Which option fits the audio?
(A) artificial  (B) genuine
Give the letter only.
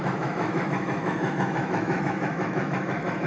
A